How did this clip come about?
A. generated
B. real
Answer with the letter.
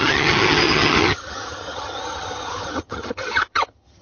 A